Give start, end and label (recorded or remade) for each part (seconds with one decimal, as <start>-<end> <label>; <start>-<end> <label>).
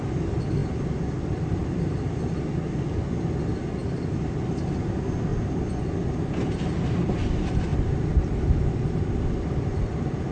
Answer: 0.0-7.7 recorded; 7.7-8.5 remade; 8.5-10.3 recorded